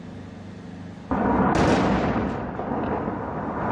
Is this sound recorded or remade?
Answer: recorded